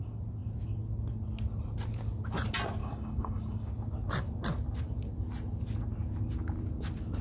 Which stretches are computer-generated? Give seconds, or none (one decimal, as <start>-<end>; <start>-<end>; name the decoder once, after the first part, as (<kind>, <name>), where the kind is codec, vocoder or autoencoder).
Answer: 2.8-3.7 (codec, DAC)